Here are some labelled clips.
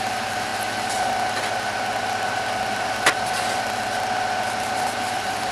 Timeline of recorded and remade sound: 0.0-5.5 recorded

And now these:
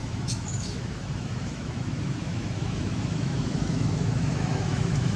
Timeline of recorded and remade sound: 0.0-5.2 remade

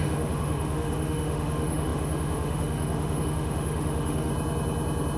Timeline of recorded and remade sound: 0.0-4.3 remade; 4.3-5.2 recorded

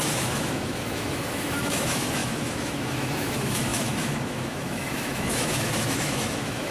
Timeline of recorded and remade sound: 0.0-6.7 remade

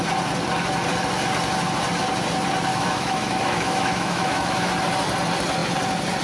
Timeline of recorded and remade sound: 0.0-2.7 recorded; 2.7-4.7 remade; 4.7-6.2 recorded